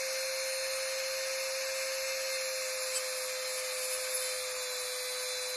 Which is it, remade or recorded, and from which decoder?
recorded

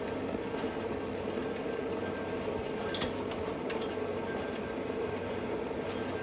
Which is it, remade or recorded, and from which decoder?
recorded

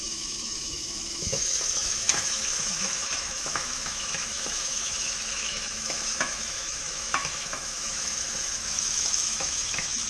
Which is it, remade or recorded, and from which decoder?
remade, autoencoder, DAC-VAE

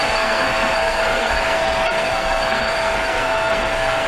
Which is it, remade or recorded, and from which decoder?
remade, codec, SNAC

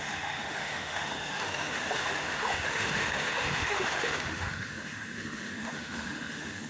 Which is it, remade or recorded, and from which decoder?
remade, autoencoder, DAC-VAE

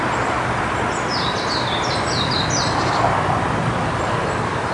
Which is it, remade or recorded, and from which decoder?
recorded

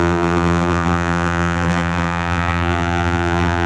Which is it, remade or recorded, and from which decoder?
remade, vocoder, BigVGAN v2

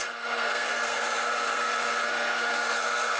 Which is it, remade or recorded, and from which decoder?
remade, codec, SNAC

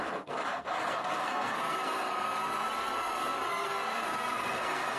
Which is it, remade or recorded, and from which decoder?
remade, codec, SNAC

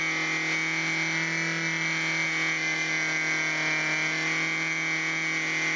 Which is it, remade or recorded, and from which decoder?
recorded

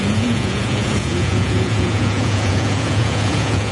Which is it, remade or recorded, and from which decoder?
remade, vocoder, Vocos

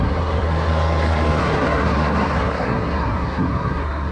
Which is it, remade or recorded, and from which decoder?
remade, codec, SNAC